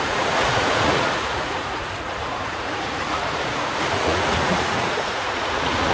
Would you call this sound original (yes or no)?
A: no